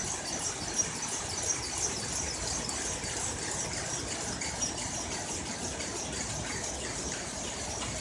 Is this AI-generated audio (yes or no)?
no